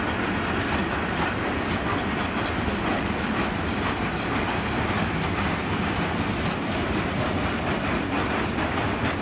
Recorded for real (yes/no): yes